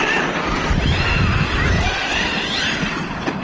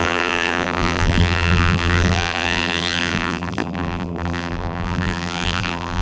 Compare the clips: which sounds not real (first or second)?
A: second